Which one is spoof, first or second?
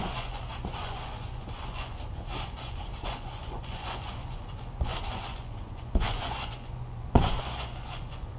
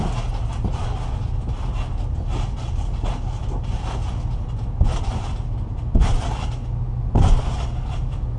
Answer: first